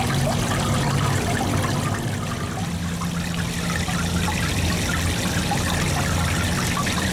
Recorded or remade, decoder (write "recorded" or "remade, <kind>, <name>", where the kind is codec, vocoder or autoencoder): recorded